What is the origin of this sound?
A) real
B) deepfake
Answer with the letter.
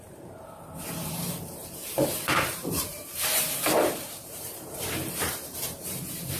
B